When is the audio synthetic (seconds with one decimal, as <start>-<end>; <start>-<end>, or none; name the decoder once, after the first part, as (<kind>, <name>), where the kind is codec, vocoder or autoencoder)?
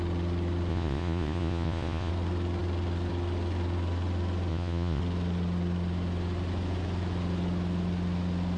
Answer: 0.7-2.1 (vocoder, Vocos); 4.5-5.0